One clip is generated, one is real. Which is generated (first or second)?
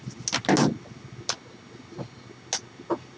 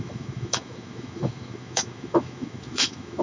second